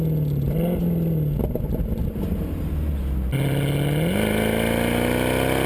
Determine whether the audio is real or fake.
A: real